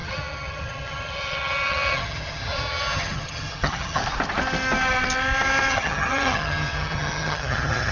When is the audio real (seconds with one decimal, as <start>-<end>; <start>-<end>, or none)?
4.0-5.7